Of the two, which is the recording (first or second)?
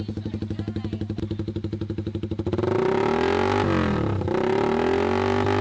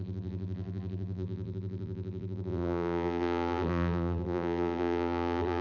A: first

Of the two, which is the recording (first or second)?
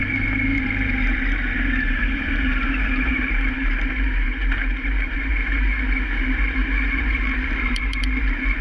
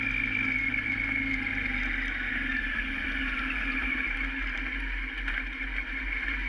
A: second